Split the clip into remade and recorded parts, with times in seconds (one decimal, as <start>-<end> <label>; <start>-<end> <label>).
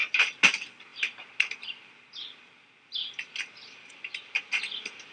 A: 0.0-5.1 recorded